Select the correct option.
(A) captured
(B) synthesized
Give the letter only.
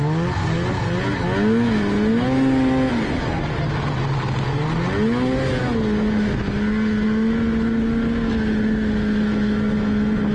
A